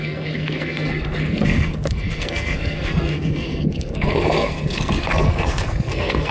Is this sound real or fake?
fake